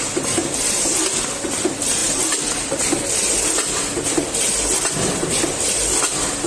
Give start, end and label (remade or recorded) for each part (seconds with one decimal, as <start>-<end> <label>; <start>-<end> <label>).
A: 0.0-6.5 recorded